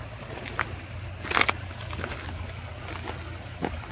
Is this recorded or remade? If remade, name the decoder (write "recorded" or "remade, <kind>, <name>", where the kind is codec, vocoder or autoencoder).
recorded